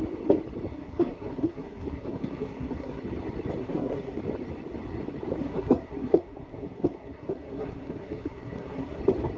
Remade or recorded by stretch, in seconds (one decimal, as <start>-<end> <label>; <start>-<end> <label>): 0.0-0.7 recorded; 0.7-3.0 remade; 3.0-3.6 recorded; 3.6-4.2 remade; 4.2-5.4 recorded; 5.4-9.0 remade; 9.0-9.4 recorded